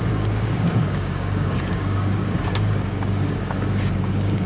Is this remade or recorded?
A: remade